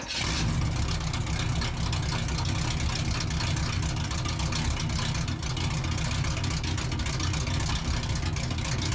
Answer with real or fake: real